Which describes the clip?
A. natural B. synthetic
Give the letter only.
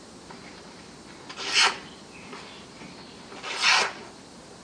A